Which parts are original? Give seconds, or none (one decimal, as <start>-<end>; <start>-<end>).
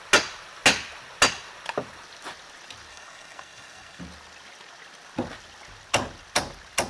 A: 0.0-2.9; 4.0-6.9